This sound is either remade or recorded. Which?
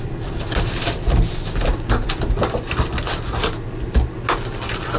recorded